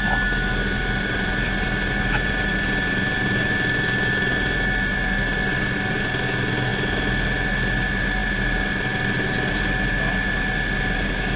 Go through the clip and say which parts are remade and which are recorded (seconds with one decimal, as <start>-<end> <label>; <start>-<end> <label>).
0.0-11.4 recorded

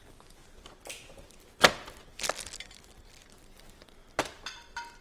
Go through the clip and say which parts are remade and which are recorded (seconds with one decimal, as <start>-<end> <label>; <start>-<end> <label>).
0.0-0.4 remade; 0.4-3.4 recorded; 3.4-4.0 remade; 4.0-5.0 recorded